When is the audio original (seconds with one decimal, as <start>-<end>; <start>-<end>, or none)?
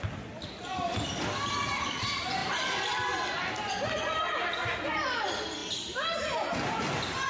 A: 0.0-2.4; 3.5-7.3